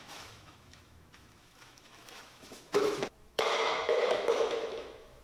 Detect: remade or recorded remade